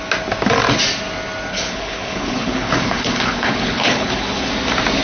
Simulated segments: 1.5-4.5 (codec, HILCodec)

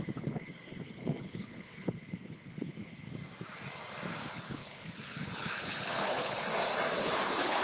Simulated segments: 0.0-3.1 (codec, HILCodec); 4.3-6.5; 7.0-7.6

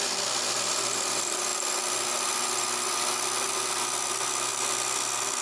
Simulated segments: none

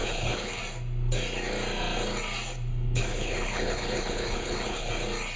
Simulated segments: 0.0-0.6 (codec, HILCodec); 2.7-4.9